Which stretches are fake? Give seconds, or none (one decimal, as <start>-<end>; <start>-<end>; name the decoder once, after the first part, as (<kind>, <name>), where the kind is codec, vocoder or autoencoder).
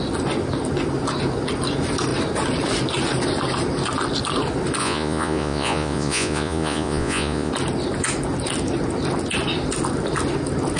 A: 4.8-7.5 (vocoder, Vocos)